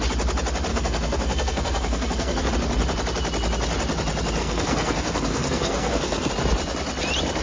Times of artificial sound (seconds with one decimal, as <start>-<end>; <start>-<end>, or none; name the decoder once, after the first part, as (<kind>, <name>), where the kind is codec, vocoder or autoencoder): 0.7-2.5 (codec, SNAC); 4.4-6.3